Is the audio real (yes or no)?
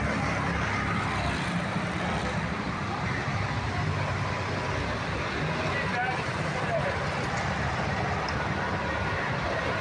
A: yes